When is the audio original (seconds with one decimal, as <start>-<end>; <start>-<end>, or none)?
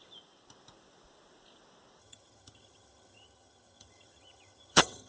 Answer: 0.0-2.0